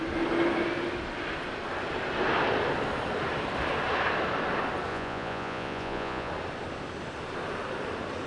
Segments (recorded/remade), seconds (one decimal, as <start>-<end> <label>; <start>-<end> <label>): 0.0-4.9 recorded; 4.9-6.3 remade; 6.3-8.3 recorded

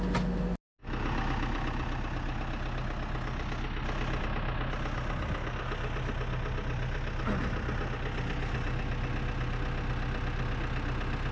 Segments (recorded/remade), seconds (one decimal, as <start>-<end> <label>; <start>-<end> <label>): 0.0-11.3 recorded

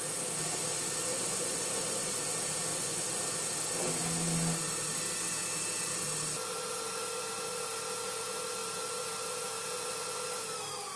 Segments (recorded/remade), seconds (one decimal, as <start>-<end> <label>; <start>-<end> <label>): 0.0-1.1 recorded; 1.1-2.2 remade; 2.2-2.7 recorded; 2.7-3.2 remade; 3.2-11.0 recorded

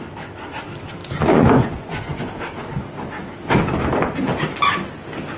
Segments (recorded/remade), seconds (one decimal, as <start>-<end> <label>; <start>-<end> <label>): 0.0-1.0 recorded; 1.0-2.3 remade; 2.3-5.4 recorded

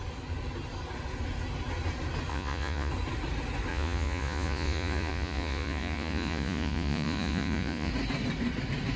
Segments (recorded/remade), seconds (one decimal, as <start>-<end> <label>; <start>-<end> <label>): 0.0-2.3 recorded; 2.3-2.9 remade; 2.9-3.7 recorded; 3.7-7.9 remade; 7.9-9.0 recorded